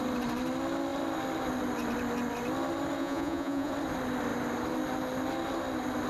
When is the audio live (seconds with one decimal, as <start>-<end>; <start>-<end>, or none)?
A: 0.0-3.0; 3.7-6.1